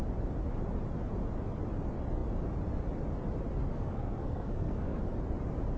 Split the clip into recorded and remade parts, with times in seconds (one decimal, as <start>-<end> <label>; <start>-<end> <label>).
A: 0.0-3.7 recorded; 3.7-5.0 remade; 5.0-5.8 recorded